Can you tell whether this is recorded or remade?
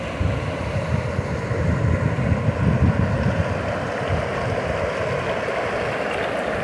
recorded